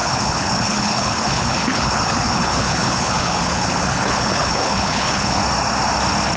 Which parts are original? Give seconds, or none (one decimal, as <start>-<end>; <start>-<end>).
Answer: 5.4-6.4